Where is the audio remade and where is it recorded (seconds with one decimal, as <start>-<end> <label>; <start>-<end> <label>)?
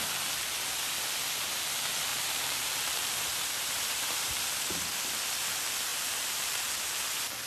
0.0-2.1 recorded; 2.1-4.3 remade; 4.3-5.9 recorded; 5.9-6.6 remade; 6.6-7.5 recorded